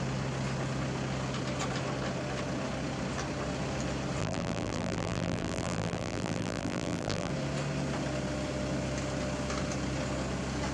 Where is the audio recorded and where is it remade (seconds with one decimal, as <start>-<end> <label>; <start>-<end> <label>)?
0.0-4.2 recorded; 4.2-7.3 remade; 7.3-10.7 recorded